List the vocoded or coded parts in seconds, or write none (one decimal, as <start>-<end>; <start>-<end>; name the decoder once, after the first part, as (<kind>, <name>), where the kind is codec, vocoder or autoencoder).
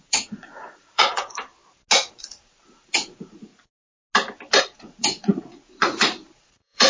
0.0-1.6 (vocoder, Vocos); 2.2-3.5; 4.6-6.9